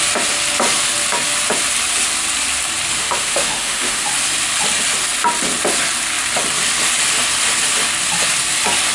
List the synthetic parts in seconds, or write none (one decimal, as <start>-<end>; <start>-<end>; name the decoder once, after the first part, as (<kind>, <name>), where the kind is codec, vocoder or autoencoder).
3.0-4.1 (autoencoder, DAC-VAE)